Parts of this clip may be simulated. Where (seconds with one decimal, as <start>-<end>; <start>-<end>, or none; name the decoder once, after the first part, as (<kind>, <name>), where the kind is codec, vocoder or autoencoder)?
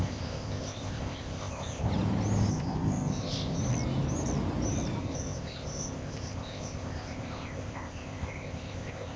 0.0-1.9 (codec, ZipCodec); 2.5-3.6; 5.0-9.2